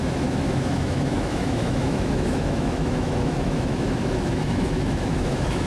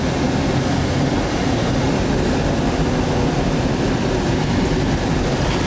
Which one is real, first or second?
second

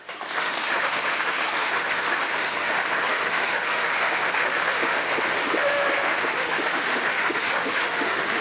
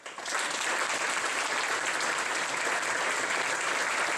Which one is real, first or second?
second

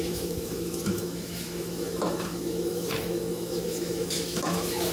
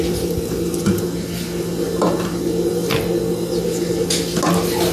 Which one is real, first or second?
second